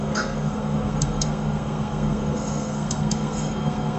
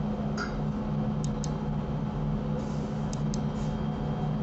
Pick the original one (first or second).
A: second